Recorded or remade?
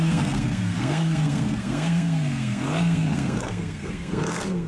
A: remade